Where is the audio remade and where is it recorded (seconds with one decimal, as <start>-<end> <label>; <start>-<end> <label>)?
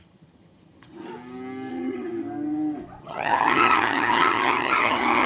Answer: 0.0-1.1 remade; 1.1-1.7 recorded; 1.7-2.1 remade; 2.1-3.0 recorded; 3.0-5.3 remade